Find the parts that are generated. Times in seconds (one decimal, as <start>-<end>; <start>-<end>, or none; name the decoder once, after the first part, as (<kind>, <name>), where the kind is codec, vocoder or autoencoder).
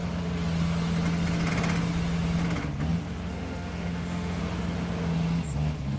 3.3-4.4 (autoencoder, DAC-VAE)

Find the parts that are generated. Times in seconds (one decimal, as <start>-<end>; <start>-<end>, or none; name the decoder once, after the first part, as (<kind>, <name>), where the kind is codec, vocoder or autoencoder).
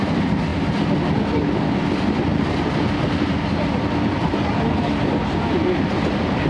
none